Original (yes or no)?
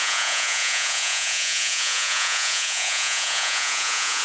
no